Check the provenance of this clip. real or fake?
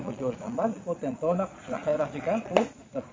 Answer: fake